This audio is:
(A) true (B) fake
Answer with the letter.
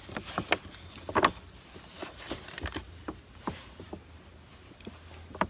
A